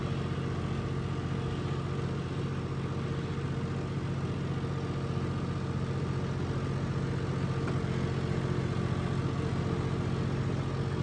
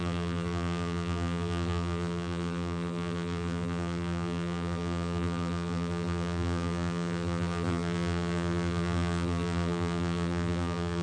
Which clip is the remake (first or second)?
second